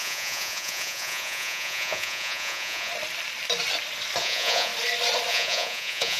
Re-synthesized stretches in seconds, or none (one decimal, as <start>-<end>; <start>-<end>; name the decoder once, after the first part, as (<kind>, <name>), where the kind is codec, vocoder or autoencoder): 0.0-2.9 (vocoder, Vocos); 4.2-4.7; 5.3-6.2